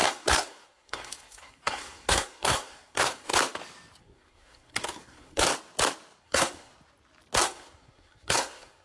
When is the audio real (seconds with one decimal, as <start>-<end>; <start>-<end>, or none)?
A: 3.3-4.0; 5.5-6.2; 6.7-7.4